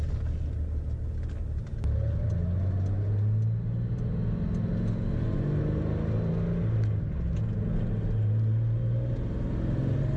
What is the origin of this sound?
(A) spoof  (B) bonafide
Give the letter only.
B